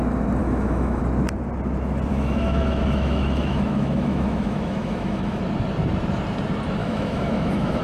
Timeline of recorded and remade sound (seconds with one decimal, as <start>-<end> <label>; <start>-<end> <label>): 0.0-0.4 recorded; 0.4-1.0 remade; 1.0-2.1 recorded; 2.1-5.4 remade; 5.4-6.8 recorded; 6.8-7.8 remade